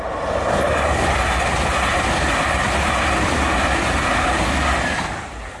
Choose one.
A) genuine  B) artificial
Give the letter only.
A